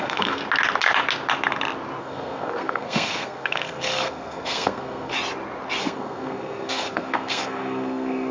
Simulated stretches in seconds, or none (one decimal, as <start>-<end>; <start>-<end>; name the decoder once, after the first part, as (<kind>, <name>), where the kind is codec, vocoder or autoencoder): 0.0-0.4 (codec, SNAC); 2.0-5.1; 5.8-8.3